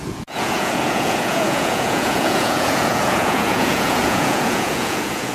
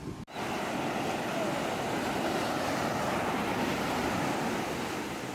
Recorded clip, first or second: second